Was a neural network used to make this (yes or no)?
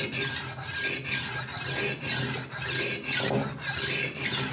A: no